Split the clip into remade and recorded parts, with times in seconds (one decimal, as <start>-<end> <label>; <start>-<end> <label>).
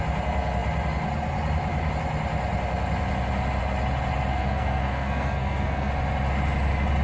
0.0-4.3 recorded; 4.3-5.9 remade; 5.9-7.0 recorded